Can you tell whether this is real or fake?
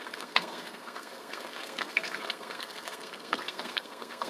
fake